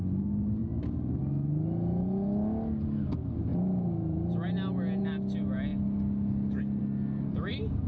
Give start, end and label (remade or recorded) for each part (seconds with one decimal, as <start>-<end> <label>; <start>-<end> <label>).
0.0-7.9 recorded